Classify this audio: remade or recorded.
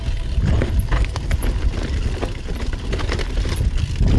recorded